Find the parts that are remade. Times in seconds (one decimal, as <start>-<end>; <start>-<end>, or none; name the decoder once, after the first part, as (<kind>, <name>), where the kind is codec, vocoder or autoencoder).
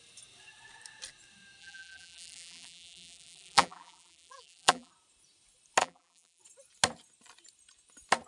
1.6-4.9 (vocoder, BigVGAN v2); 5.8-6.4